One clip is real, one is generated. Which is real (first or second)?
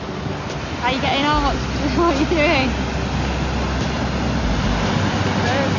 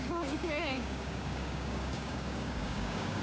first